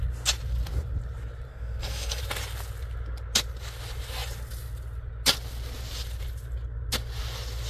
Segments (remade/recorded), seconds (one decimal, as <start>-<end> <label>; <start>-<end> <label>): 0.0-1.5 recorded; 1.5-2.2 remade; 2.2-7.7 recorded